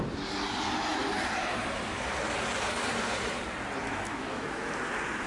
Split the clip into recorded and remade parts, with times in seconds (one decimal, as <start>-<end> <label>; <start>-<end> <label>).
0.0-3.8 recorded; 3.8-4.7 remade; 4.7-5.3 recorded